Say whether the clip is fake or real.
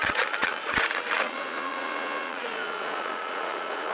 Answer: fake